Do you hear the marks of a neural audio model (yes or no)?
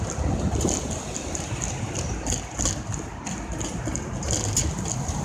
no